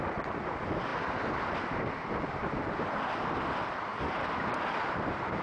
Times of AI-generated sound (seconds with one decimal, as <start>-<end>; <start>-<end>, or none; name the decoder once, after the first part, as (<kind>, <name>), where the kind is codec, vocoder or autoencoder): 3.9-5.4 (vocoder, BigVGAN v2)